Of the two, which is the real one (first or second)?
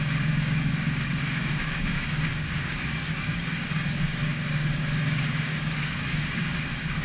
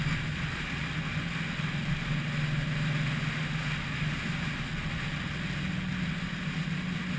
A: second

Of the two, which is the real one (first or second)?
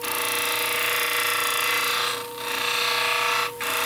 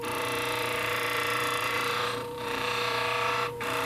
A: first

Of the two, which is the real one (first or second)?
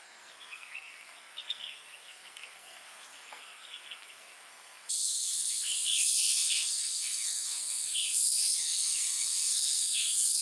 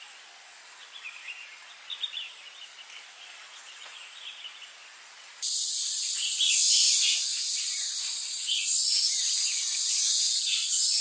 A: second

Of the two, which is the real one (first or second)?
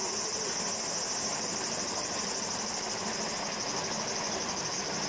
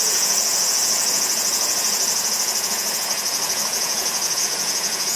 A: first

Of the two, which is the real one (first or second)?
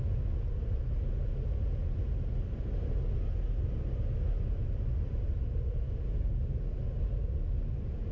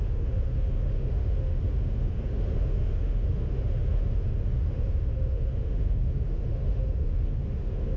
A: first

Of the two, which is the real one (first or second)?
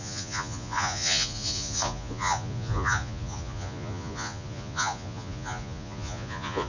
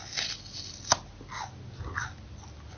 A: second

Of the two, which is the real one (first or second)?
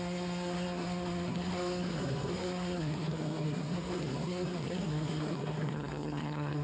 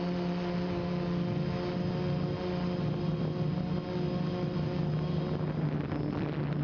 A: second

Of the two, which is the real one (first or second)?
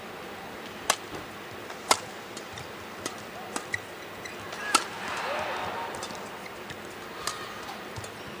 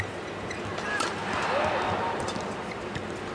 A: first